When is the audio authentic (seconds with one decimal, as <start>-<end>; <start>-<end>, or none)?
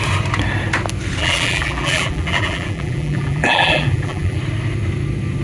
0.0-1.2; 4.4-5.4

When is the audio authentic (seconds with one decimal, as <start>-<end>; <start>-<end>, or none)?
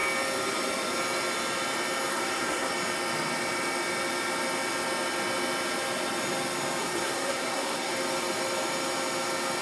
0.0-2.1; 2.7-6.8; 7.9-9.6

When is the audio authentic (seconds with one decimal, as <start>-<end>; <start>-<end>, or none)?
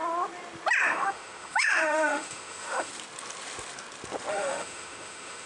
0.0-0.8; 2.9-4.3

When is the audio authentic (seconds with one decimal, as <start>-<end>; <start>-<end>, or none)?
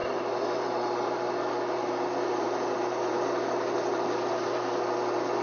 none